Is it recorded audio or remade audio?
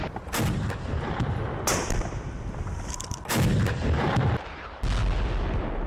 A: recorded